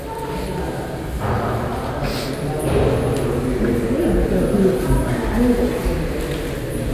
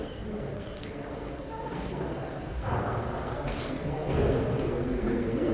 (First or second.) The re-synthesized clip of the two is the second